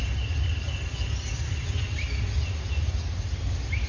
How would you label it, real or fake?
real